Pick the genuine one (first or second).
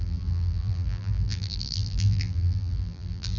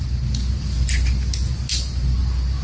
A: second